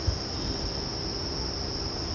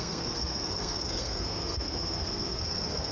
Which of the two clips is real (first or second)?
first